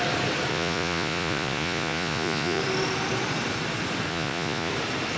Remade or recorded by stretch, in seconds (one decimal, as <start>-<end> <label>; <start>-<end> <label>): 0.0-0.5 recorded; 0.5-2.6 remade; 2.6-4.1 recorded; 4.1-4.7 remade; 4.7-5.2 recorded